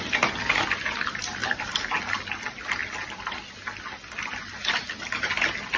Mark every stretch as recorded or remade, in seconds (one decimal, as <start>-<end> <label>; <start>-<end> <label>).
0.0-5.8 recorded

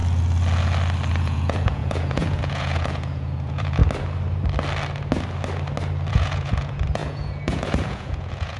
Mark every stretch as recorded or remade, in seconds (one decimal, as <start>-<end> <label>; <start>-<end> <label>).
0.0-1.1 recorded; 1.1-3.8 remade; 3.8-6.1 recorded; 6.1-8.6 remade

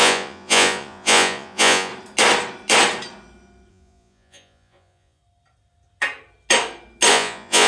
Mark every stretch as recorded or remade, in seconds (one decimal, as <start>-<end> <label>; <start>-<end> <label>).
0.0-1.9 remade; 1.9-3.7 recorded; 3.7-5.2 remade; 5.2-7.1 recorded; 7.1-7.7 remade

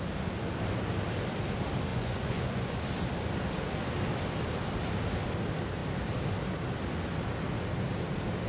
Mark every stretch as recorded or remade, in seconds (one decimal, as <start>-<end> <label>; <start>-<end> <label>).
0.0-1.9 recorded; 1.9-2.8 remade; 2.8-8.5 recorded